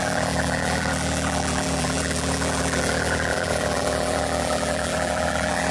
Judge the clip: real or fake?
fake